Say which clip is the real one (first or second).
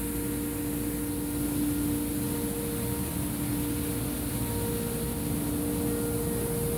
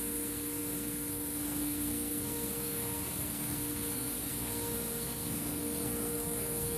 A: first